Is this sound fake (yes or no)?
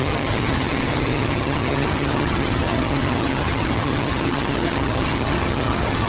yes